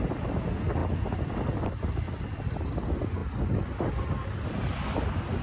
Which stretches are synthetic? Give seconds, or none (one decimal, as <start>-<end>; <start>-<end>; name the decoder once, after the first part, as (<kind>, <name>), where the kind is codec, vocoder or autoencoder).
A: none